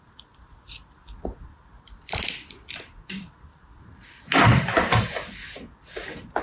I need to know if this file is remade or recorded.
recorded